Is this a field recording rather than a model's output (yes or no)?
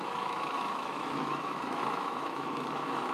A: no